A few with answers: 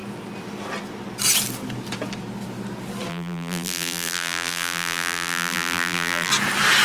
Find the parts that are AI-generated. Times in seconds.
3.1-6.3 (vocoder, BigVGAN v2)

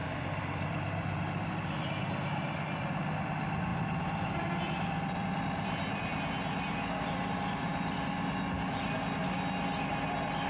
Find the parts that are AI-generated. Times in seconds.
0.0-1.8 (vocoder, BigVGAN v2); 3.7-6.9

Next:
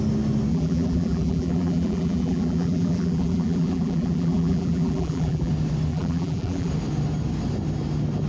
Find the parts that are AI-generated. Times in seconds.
0.5-5.5 (vocoder, BigVGAN v2); 5.9-6.7